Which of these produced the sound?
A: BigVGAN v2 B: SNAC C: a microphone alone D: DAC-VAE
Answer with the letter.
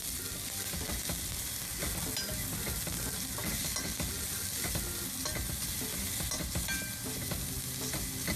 C